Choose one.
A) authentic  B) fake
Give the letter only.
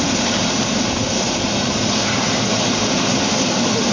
A